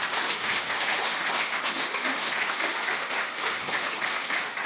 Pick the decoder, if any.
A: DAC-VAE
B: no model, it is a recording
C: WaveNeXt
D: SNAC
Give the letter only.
A